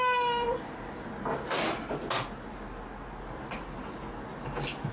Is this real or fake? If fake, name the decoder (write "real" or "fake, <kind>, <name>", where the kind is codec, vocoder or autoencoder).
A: real